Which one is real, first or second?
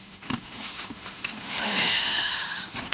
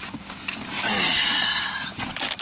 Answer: second